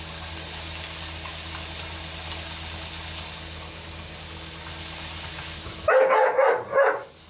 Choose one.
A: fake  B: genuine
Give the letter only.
B